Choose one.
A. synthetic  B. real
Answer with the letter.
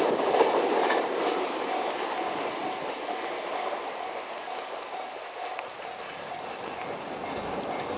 B